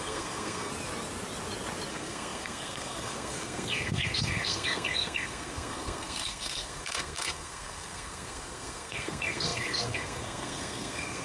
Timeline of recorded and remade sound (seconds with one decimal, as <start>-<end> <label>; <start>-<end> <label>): 0.0-0.7 remade; 0.7-1.9 recorded; 1.9-11.2 remade